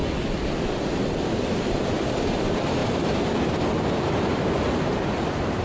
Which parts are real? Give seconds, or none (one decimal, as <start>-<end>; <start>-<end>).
0.0-5.6